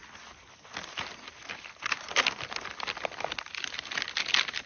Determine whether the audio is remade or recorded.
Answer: recorded